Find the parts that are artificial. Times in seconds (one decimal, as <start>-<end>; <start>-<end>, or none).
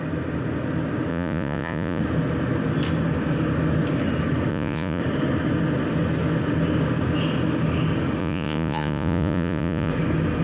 1.1-2.0; 4.5-5.0; 8.2-9.9